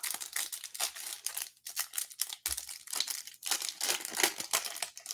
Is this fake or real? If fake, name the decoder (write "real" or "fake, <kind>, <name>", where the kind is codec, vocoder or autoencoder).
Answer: real